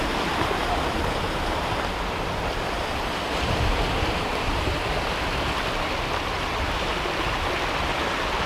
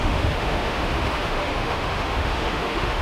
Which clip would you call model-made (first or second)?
second